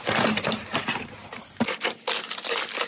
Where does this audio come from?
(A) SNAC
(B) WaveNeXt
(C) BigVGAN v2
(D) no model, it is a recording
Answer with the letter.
D